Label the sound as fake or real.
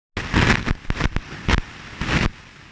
real